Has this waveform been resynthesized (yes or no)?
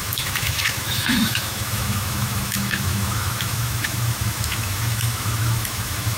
yes